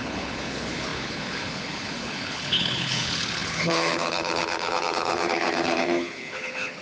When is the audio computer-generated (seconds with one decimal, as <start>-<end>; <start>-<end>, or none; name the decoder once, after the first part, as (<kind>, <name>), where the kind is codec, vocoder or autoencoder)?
0.0-6.8 (codec, HILCodec)